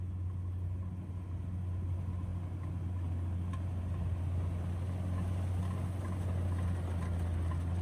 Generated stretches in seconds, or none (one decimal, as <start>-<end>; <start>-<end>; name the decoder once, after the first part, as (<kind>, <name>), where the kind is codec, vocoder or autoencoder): none